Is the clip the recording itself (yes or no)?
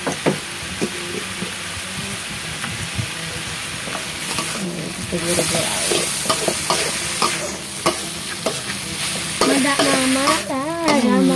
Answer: yes